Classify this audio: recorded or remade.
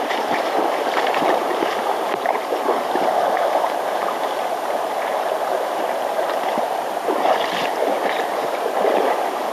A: remade